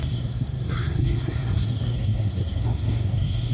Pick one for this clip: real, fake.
fake